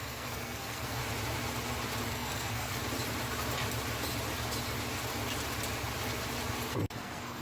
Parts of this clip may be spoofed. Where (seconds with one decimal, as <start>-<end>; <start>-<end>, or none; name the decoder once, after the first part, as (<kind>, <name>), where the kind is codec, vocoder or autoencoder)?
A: 0.0-1.0 (codec, SNAC); 2.1-2.8; 6.7-7.4